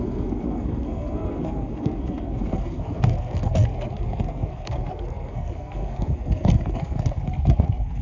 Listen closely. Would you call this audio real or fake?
fake